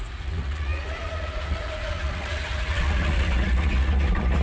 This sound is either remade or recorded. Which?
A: remade